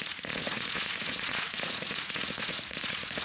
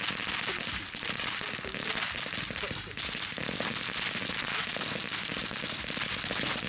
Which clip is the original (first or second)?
second